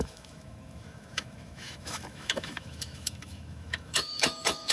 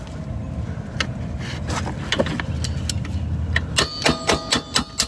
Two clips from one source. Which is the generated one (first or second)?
first